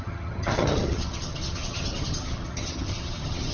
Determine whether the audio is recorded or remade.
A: remade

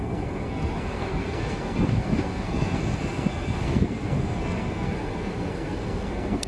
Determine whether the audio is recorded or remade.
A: remade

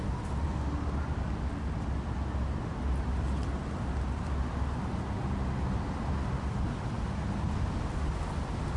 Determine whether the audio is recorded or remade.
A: recorded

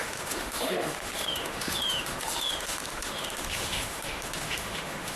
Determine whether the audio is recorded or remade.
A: remade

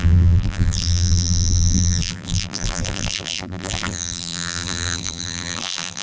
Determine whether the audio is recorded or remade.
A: remade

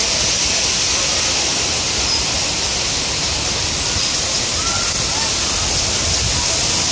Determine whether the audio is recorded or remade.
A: recorded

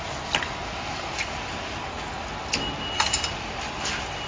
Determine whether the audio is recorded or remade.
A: recorded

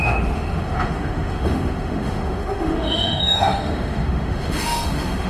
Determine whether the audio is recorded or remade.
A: remade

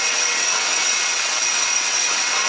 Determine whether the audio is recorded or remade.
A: remade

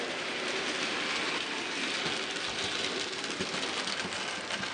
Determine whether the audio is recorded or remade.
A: recorded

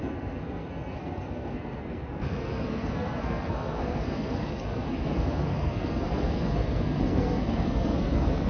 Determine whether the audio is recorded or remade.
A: remade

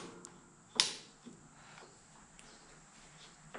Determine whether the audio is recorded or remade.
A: recorded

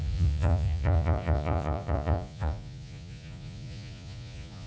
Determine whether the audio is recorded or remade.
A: remade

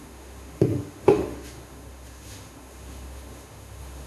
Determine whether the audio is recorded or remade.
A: remade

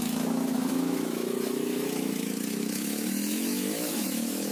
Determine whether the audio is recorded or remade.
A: remade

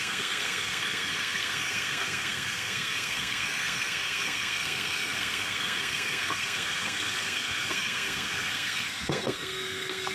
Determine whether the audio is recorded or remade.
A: remade